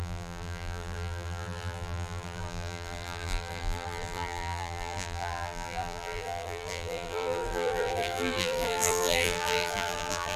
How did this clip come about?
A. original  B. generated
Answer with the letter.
B